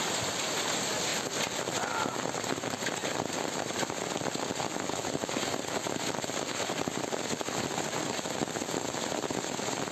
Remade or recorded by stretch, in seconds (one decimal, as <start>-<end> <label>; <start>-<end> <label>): 0.0-9.9 recorded